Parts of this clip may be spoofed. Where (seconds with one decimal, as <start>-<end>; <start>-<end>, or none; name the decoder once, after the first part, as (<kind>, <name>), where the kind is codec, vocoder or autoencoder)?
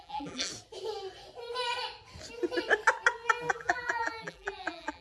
0.0-0.5 (vocoder, BigVGAN v2); 3.5-5.0